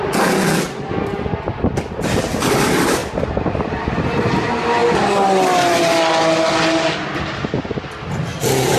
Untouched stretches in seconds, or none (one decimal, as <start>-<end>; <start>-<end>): 0.0-8.8